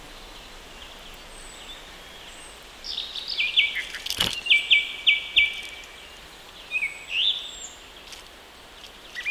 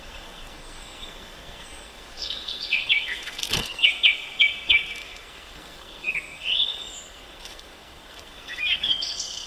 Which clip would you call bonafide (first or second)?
first